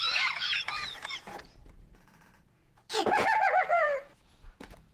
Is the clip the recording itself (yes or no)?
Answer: no